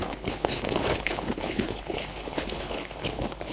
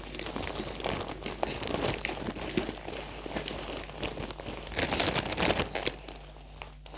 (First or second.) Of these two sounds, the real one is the second